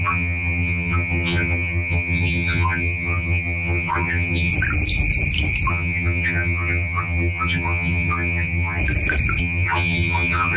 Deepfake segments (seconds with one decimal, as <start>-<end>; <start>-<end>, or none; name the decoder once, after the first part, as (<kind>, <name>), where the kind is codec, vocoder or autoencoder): 0.0-4.5 (vocoder, HiFi-GAN); 5.7-8.8; 9.4-10.6